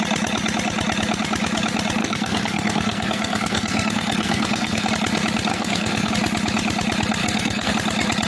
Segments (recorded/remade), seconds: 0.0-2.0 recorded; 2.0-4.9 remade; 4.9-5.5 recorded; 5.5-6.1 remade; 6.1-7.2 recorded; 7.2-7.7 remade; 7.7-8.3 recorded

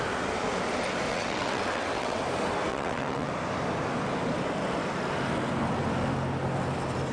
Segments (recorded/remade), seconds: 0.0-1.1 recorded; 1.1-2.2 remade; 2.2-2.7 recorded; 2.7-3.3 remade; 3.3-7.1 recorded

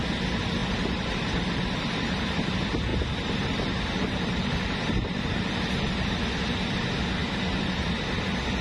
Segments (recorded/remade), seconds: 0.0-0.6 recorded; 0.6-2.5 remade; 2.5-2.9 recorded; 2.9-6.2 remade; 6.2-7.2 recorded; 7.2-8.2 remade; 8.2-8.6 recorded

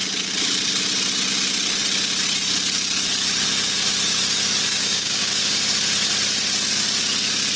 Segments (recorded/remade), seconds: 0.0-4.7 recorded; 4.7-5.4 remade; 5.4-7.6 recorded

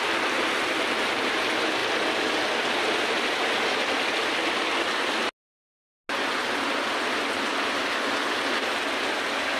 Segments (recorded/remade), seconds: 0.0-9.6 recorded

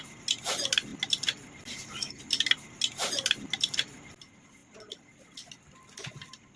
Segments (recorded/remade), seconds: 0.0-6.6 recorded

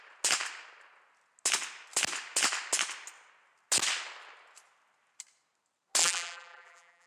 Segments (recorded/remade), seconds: 0.0-6.0 recorded; 6.0-7.1 remade